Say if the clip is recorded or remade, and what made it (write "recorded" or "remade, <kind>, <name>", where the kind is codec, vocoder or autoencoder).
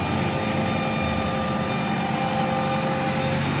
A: recorded